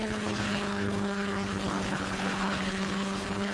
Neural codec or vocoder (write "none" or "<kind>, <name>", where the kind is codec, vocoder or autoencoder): codec, HILCodec